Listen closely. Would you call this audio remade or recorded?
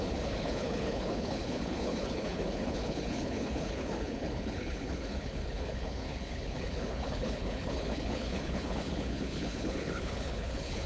remade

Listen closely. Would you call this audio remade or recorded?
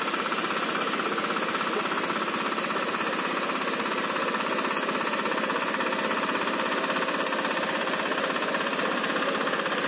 recorded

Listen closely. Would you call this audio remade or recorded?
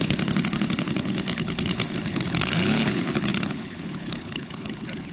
remade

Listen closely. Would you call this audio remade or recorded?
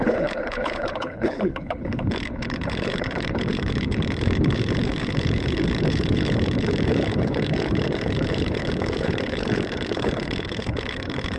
remade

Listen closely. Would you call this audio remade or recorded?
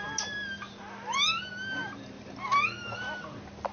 recorded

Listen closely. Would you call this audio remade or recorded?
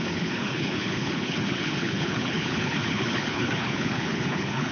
remade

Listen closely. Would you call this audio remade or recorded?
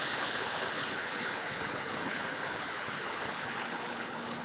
remade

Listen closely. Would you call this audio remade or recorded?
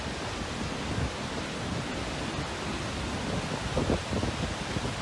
recorded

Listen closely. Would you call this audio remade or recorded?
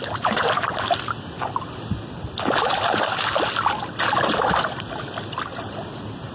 recorded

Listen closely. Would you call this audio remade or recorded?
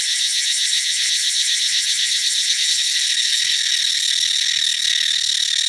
remade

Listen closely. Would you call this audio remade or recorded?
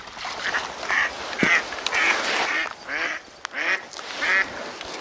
recorded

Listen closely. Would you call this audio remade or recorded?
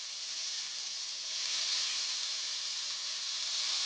recorded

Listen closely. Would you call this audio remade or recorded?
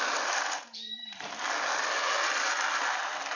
recorded